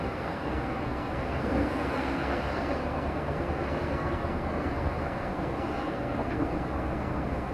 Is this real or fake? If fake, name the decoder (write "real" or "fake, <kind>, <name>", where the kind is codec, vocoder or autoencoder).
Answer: fake, codec, SNAC